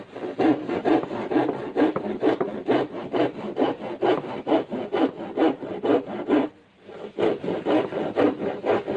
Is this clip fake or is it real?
real